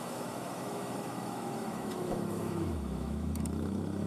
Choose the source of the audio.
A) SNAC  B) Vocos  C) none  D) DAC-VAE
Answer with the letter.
D